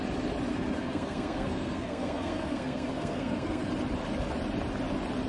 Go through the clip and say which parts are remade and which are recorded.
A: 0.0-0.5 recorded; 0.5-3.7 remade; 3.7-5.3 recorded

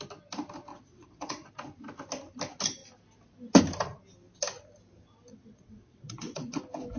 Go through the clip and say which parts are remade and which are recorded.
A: 0.0-0.7 recorded; 0.7-1.5 remade; 1.5-5.3 recorded; 5.3-6.6 remade; 6.6-7.0 recorded

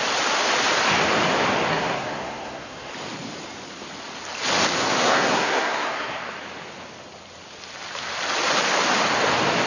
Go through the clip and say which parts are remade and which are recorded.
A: 0.0-1.7 recorded; 1.7-2.9 remade; 2.9-5.0 recorded; 5.0-6.2 remade; 6.2-9.7 recorded

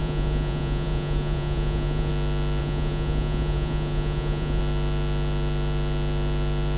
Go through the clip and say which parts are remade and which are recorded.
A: 0.0-2.1 remade; 2.1-2.6 recorded; 2.6-4.6 remade; 4.6-6.8 recorded